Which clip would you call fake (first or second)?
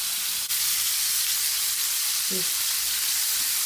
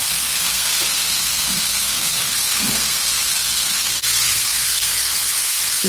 second